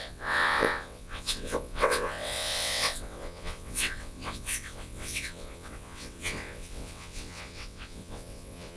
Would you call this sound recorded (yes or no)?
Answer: no